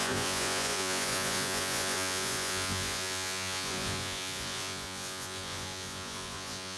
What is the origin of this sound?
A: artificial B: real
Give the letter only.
A